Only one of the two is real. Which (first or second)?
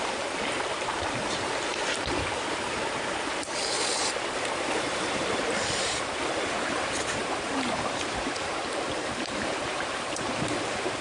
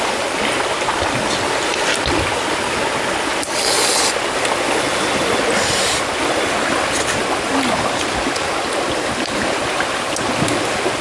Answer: second